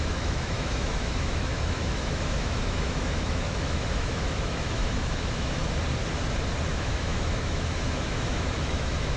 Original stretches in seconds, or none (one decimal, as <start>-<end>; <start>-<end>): 5.6-6.7